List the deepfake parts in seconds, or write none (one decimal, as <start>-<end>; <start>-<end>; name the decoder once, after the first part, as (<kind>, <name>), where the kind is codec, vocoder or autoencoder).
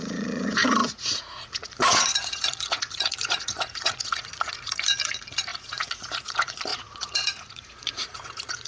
0.0-8.7 (vocoder, Vocos)